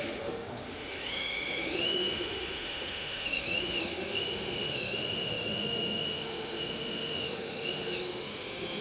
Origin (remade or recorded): remade